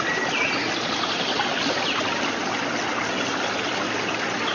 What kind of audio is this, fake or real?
real